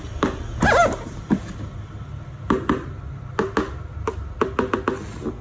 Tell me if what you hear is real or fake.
real